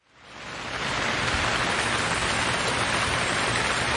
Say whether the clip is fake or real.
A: real